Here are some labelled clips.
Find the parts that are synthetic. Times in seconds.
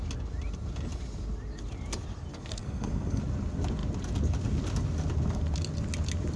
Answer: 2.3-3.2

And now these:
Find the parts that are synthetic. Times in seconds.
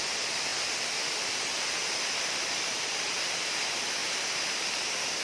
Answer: none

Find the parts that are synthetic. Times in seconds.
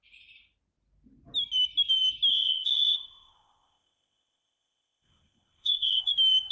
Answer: 2.3-6.1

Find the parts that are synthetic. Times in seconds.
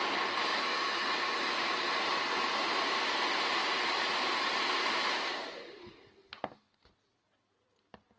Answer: 0.5-1.9; 3.6-6.1